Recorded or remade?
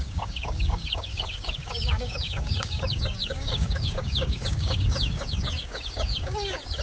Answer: remade